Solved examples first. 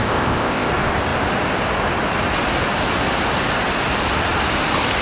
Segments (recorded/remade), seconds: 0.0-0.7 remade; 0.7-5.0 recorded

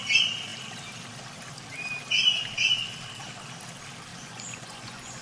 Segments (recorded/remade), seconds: 0.0-4.1 recorded; 4.1-5.2 remade

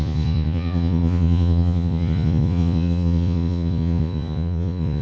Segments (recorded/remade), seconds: 0.0-5.0 remade

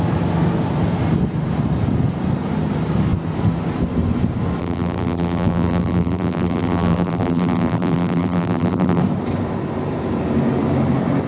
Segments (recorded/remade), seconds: 0.0-4.6 recorded; 4.6-9.0 remade; 9.0-11.3 recorded

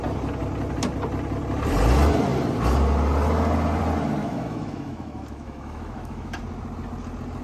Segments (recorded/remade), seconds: 0.0-4.2 recorded; 4.2-6.4 remade; 6.4-7.4 recorded

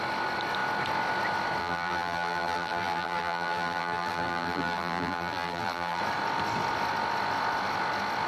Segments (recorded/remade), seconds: 0.0-1.6 recorded; 1.6-6.0 remade; 6.0-8.3 recorded